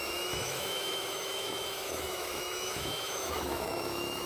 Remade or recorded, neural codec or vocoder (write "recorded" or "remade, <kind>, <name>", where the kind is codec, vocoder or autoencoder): remade, autoencoder, DAC-VAE